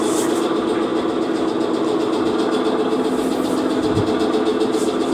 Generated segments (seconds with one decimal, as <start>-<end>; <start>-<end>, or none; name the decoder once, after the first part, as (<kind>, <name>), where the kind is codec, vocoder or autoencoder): 0.9-4.0 (vocoder, BigVGAN v2); 4.5-5.1